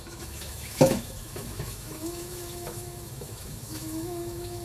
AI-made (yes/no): yes